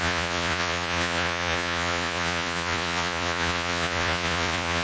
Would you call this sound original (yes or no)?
no